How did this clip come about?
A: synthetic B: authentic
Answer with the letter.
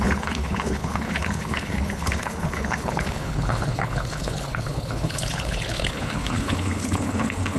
A